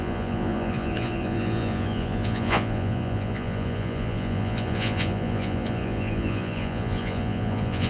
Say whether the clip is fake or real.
fake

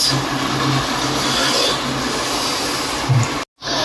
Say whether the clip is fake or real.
real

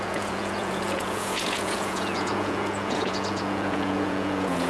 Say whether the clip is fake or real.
fake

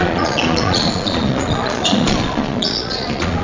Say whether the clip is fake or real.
fake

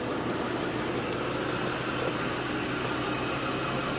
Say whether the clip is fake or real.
real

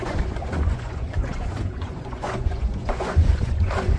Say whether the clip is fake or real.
fake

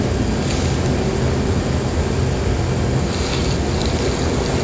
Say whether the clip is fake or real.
real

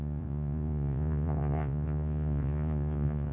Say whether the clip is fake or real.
fake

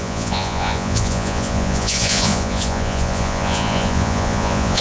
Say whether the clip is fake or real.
fake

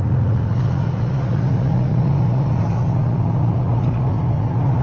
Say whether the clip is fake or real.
fake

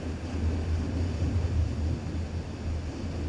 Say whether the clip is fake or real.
real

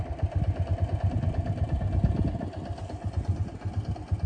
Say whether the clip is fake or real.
real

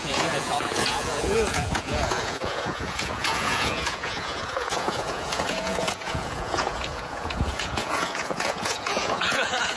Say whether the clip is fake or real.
fake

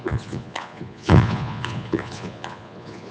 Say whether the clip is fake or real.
fake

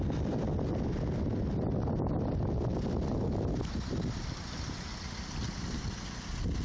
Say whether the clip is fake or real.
real